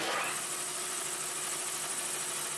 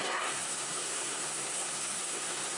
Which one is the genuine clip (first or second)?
first